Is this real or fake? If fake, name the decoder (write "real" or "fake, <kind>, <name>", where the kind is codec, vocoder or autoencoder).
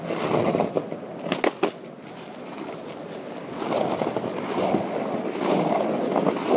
real